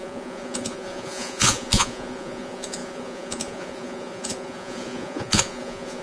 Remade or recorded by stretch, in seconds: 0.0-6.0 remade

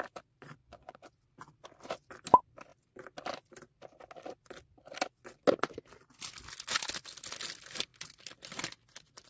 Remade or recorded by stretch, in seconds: 0.0-0.6 recorded; 0.6-1.1 remade; 1.1-9.3 recorded

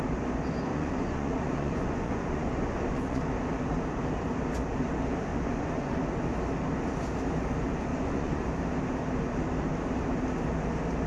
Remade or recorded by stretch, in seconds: 0.0-0.7 recorded; 0.7-3.2 remade; 3.2-5.3 recorded; 5.3-6.0 remade; 6.0-7.9 recorded; 7.9-8.4 remade; 8.4-11.1 recorded

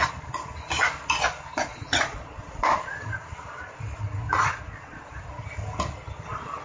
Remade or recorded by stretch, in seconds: 0.0-1.7 recorded; 1.7-2.6 remade; 2.6-4.2 recorded; 4.2-5.3 remade; 5.3-6.6 recorded